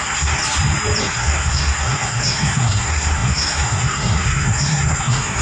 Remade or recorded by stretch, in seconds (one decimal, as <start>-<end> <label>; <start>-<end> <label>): 0.0-0.4 remade; 0.4-1.0 recorded; 1.0-5.4 remade